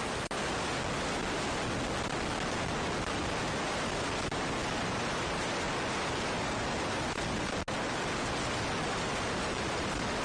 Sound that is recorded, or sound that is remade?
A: recorded